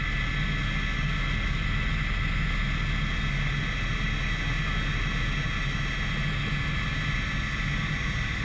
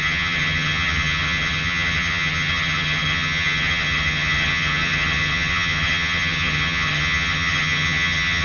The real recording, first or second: first